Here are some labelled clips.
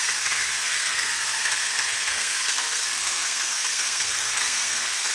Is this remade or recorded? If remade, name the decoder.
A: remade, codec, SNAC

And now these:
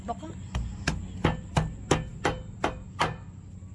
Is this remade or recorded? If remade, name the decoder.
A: recorded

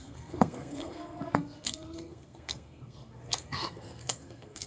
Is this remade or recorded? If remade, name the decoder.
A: remade, codec, SNAC